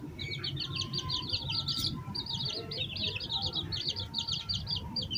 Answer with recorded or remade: recorded